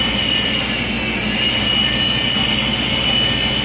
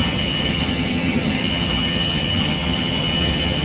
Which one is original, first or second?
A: first